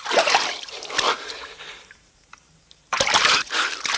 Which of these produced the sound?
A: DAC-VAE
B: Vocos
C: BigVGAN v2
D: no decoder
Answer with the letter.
C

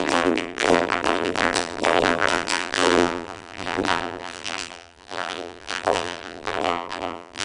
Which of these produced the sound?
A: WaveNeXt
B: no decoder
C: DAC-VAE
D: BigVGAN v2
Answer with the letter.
D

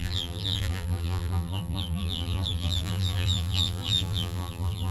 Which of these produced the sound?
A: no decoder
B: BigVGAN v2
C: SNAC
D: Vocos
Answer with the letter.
B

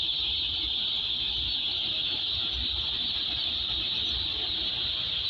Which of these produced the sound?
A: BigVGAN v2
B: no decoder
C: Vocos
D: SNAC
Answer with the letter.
B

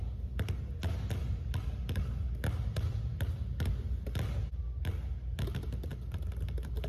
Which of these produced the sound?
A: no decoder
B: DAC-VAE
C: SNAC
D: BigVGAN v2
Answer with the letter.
A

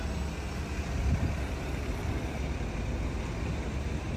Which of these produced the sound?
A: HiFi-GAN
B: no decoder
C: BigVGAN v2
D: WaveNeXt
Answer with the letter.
B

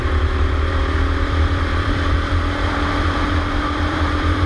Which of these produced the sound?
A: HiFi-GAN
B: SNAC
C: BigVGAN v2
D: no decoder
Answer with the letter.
C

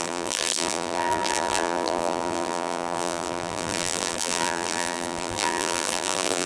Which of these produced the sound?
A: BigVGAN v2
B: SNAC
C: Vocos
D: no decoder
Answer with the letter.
A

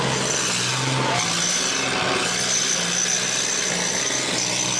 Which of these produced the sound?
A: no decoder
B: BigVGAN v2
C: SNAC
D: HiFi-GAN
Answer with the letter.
A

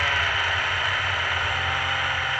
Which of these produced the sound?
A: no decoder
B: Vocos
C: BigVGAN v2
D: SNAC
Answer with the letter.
A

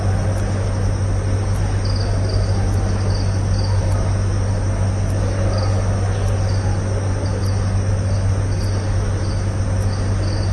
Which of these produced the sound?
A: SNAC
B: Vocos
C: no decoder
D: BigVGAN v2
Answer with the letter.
C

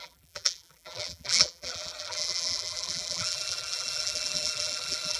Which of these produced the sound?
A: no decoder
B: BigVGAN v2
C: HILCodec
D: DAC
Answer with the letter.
B